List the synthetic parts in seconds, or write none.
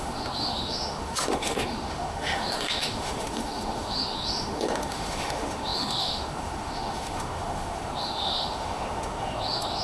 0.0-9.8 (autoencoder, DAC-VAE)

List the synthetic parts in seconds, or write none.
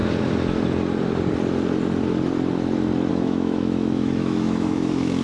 3.1-5.2 (autoencoder, DAC-VAE)